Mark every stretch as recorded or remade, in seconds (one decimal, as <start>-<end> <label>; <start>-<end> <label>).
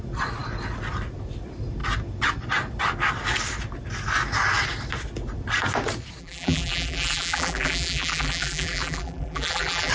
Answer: 0.0-6.2 recorded; 6.2-9.9 remade